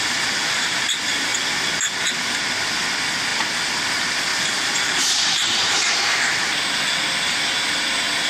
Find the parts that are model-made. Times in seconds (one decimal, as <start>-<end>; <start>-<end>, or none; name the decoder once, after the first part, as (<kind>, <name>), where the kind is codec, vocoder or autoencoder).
4.3-6.4 (vocoder, BigVGAN v2)